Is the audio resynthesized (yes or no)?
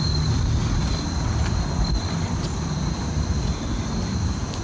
no